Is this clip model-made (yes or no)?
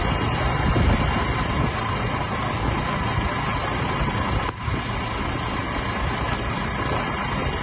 no